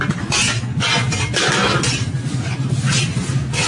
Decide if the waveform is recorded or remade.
recorded